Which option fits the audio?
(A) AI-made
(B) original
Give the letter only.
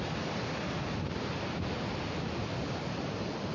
B